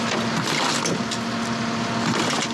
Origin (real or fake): real